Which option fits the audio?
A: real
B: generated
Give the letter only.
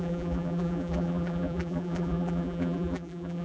B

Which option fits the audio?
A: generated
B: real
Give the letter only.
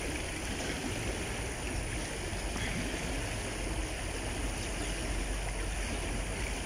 B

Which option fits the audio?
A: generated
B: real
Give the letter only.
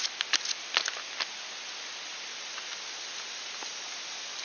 B